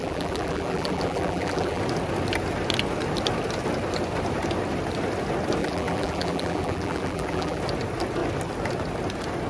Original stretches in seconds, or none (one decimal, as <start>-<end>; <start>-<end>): 1.8-5.6; 7.6-9.5